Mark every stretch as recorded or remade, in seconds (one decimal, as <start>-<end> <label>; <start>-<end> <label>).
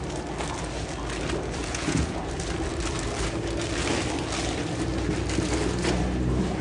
0.0-1.6 recorded; 1.6-2.2 remade; 2.2-6.6 recorded